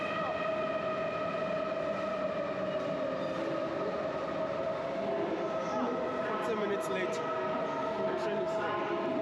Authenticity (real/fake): real